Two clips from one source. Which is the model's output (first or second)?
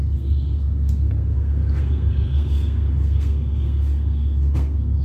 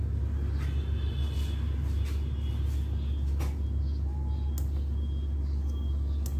first